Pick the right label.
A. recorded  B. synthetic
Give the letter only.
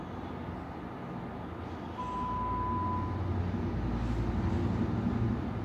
A